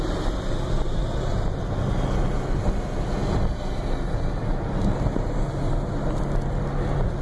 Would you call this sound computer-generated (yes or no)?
no